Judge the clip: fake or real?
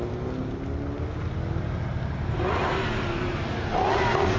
real